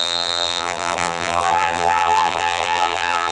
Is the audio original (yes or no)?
no